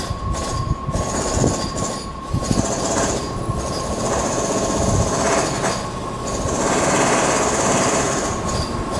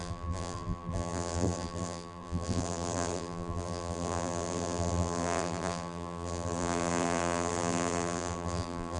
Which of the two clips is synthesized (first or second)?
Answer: second